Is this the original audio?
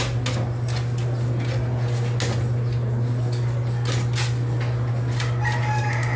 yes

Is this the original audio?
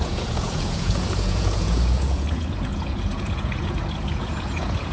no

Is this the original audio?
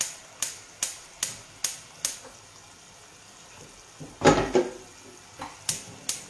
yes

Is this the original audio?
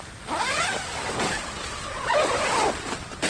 yes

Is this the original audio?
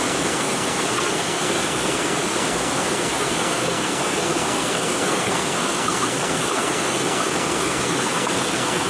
no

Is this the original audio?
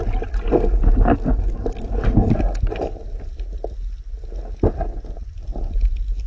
yes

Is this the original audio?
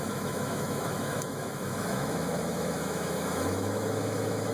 no